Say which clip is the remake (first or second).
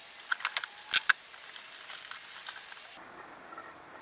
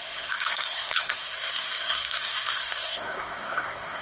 second